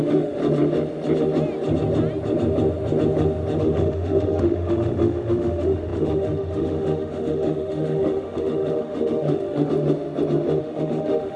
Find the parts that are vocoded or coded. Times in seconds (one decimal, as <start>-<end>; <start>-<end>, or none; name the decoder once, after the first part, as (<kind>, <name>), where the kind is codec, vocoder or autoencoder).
0.0-0.4 (autoencoder, DAC-VAE); 3.6-9.7; 10.6-11.4